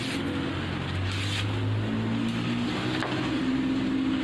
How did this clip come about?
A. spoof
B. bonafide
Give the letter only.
B